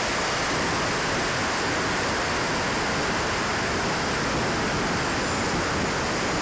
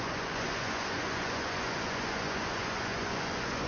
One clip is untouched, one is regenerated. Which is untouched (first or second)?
first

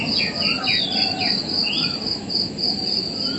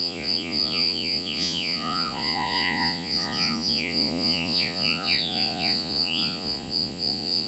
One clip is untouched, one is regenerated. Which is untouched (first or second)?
first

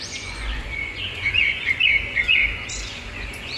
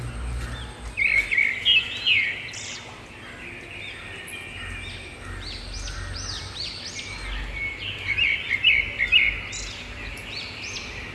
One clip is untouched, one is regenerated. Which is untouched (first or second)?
second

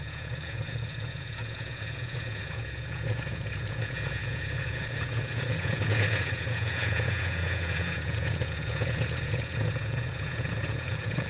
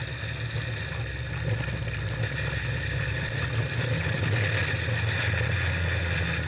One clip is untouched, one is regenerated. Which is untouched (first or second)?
second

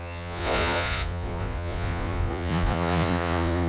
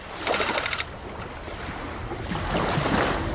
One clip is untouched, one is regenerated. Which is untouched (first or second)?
second